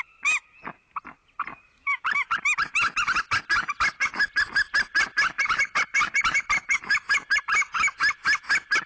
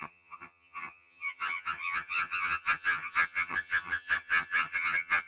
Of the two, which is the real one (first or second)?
first